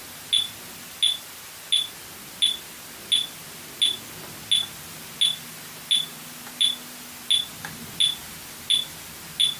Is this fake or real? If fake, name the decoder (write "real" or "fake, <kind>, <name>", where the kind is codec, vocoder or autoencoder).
real